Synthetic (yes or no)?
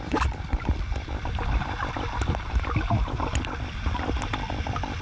no